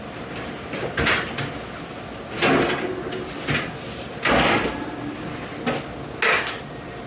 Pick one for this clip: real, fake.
real